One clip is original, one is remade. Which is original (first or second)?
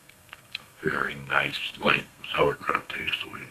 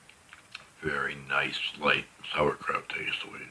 second